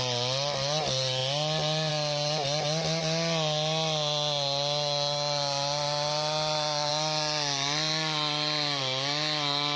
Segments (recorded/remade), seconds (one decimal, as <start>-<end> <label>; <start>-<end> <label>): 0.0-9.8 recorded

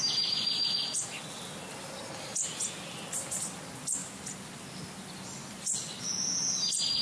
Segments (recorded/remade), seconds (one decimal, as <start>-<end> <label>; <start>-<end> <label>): 0.0-7.0 recorded

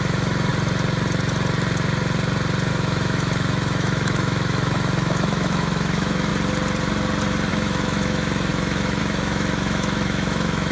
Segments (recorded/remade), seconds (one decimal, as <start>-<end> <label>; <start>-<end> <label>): 0.0-0.5 remade; 0.5-2.7 recorded; 2.7-6.3 remade; 6.3-7.5 recorded; 7.5-10.7 remade

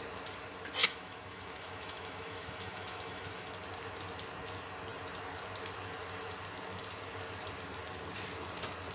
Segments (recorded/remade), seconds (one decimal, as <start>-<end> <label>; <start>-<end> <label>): 0.0-0.8 recorded; 0.8-3.5 remade; 3.5-8.9 recorded

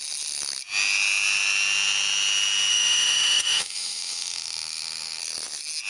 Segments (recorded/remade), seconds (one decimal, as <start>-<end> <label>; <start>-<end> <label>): 0.0-2.7 recorded; 2.7-5.2 remade; 5.2-5.9 recorded

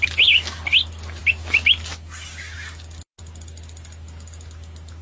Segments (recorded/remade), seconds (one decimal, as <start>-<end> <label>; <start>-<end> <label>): 0.0-5.0 recorded

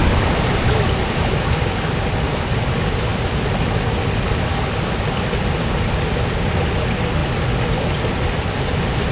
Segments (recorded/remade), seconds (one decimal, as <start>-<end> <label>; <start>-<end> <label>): 0.0-9.1 recorded

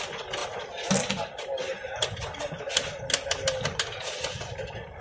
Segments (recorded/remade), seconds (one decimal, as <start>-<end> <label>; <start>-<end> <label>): 0.0-5.0 recorded